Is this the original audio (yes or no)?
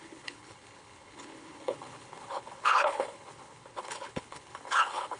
no